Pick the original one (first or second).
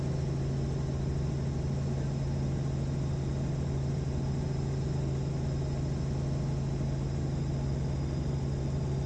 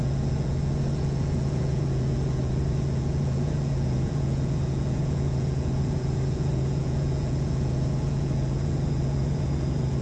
first